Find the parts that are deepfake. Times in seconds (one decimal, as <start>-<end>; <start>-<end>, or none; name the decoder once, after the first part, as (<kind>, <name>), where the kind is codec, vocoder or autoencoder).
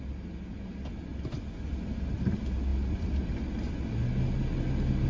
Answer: none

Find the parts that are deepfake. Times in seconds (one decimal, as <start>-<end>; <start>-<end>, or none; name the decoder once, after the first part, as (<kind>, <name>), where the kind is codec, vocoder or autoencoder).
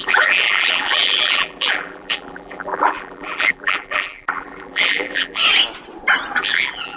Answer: 0.0-5.4 (vocoder, BigVGAN v2); 6.4-7.0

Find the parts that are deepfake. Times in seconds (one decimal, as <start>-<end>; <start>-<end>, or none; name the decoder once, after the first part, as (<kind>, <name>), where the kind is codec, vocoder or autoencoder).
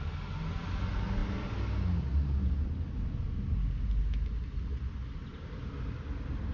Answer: none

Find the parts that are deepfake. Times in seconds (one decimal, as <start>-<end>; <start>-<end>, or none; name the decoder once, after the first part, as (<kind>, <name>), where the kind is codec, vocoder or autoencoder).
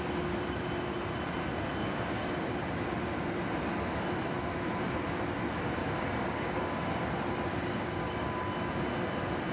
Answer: 1.8-2.3 (codec, DAC); 5.8-6.8; 7.5-8.4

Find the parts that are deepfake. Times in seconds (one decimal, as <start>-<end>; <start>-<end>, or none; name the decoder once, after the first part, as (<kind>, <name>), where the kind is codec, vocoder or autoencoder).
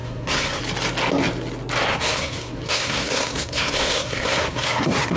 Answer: 0.0-0.6 (codec, SNAC); 1.9-5.2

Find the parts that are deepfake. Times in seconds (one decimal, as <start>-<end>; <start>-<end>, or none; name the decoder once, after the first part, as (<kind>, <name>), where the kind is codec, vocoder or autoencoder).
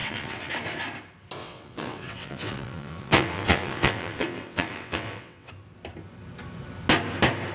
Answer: 0.0-0.5 (vocoder, WaveNeXt); 1.4-5.5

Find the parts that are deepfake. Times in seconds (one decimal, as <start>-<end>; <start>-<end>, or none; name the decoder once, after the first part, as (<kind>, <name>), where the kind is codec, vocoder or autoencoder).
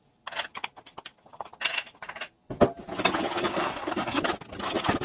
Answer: 3.5-4.2 (codec, SNAC)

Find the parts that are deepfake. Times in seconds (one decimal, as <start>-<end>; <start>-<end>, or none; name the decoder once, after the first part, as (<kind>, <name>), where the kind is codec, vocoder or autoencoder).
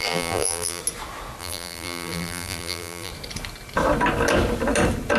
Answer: 0.0-0.8 (vocoder, BigVGAN v2); 1.4-3.1